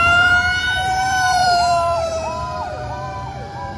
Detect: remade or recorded remade